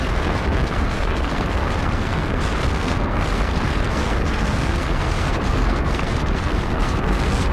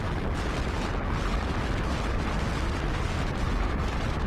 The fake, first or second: first